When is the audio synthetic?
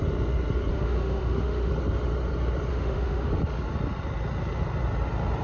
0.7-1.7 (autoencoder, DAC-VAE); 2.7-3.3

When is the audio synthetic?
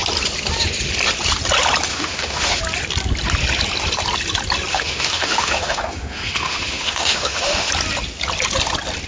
1.9-2.6 (autoencoder, DAC-VAE); 4.7-7.7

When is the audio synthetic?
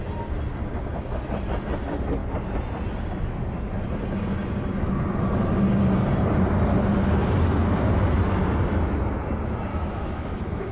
9.7-10.7 (autoencoder, DAC-VAE)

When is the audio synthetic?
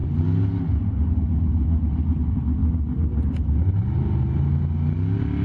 none